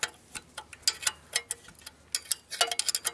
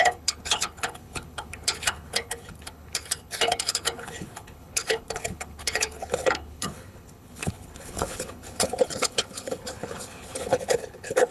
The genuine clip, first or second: first